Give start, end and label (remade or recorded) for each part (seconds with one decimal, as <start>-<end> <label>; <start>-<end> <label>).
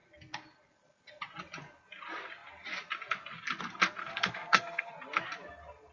0.0-4.0 recorded; 4.0-4.9 remade; 4.9-5.9 recorded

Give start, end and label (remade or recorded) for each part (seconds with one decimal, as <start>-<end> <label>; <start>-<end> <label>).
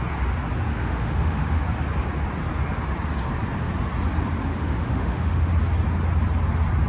0.0-0.7 recorded; 0.7-1.6 remade; 1.6-4.5 recorded; 4.5-5.5 remade; 5.5-6.9 recorded